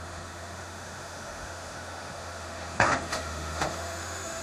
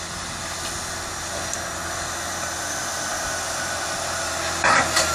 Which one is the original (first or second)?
second